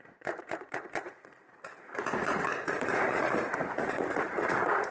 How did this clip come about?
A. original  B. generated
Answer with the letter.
B